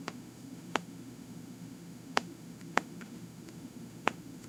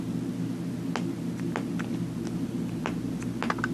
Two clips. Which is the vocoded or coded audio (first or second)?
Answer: first